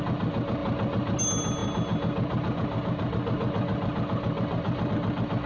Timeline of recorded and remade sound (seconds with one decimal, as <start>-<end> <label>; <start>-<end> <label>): 0.0-5.5 recorded